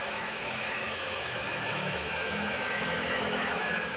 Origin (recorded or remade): remade